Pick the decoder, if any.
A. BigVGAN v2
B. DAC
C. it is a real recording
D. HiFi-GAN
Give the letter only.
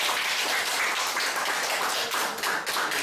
C